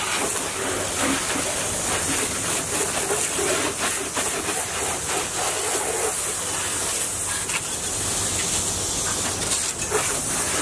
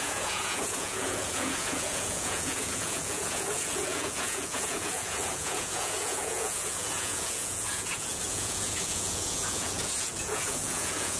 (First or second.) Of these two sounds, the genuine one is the first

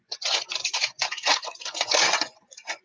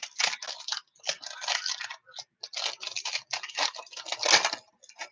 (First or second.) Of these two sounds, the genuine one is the second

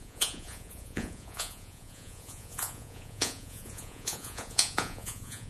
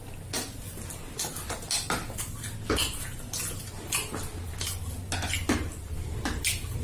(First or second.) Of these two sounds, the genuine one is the second